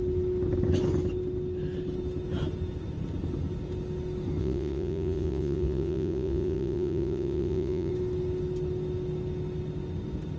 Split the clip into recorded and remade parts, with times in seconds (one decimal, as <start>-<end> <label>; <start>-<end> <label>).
0.0-4.4 recorded; 4.4-7.9 remade; 7.9-10.4 recorded